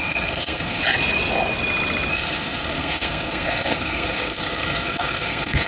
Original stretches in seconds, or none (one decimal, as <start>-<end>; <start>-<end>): 0.8-2.1